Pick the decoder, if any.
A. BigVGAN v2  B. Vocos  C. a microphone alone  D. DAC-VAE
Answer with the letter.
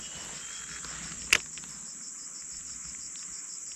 C